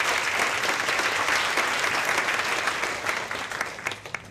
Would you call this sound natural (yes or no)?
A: yes